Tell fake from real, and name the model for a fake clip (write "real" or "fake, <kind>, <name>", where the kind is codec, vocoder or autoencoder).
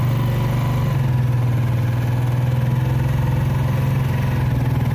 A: real